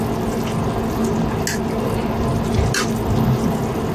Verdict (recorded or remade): recorded